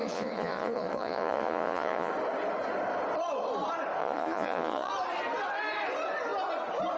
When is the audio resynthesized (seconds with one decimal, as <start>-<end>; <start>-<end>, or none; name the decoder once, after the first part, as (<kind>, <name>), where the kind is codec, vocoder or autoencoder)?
0.0-2.1 (vocoder, Vocos); 4.0-4.9